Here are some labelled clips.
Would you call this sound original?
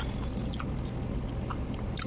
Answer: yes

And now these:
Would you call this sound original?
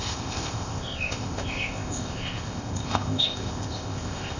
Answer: no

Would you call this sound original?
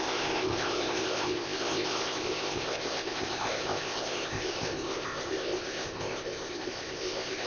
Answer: no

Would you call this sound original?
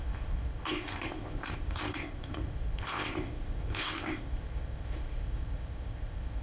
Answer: no